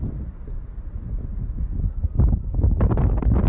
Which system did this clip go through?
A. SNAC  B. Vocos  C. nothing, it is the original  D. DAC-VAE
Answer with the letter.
C